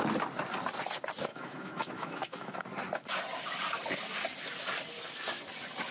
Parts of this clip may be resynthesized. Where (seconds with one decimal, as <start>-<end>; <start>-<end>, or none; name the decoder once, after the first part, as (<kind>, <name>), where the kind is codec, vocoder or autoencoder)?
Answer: 1.3-2.6 (autoencoder, DAC-VAE)